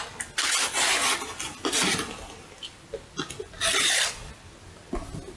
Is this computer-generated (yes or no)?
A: no